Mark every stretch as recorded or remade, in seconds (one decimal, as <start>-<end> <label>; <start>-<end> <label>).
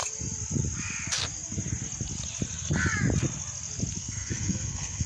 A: 0.0-4.0 recorded; 4.0-5.1 remade